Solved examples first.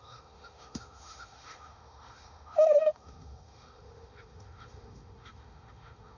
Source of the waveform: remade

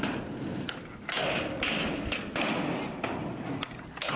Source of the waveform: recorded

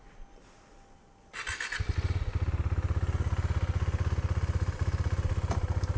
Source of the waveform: recorded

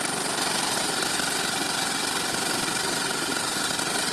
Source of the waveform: recorded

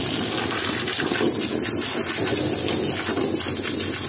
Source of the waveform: recorded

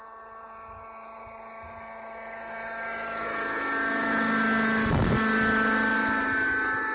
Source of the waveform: recorded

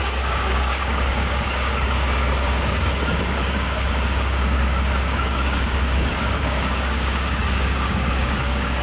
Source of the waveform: remade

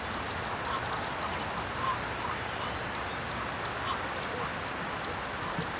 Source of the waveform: recorded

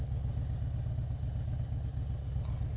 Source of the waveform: recorded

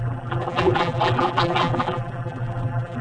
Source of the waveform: remade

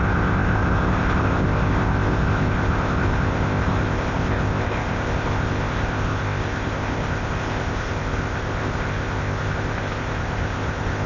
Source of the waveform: remade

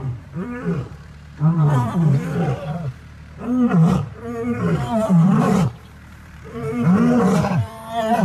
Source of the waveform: remade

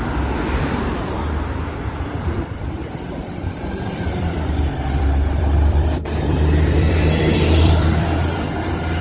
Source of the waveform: remade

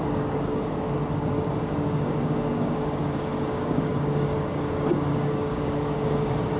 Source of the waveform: remade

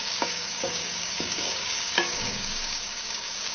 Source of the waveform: remade